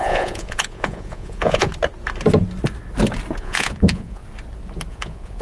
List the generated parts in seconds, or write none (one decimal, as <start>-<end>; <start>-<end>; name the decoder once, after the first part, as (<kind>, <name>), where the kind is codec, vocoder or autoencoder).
0.0-1.7 (vocoder, Vocos); 3.4-4.2; 4.9-5.4